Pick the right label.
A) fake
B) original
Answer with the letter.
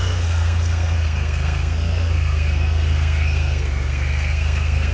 A